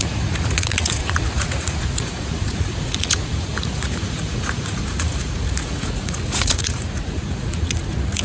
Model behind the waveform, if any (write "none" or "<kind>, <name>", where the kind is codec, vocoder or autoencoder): vocoder, Vocos